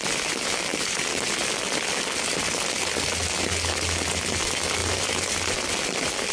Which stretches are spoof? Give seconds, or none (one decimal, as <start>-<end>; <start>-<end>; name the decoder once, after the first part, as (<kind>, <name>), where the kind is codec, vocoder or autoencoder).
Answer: none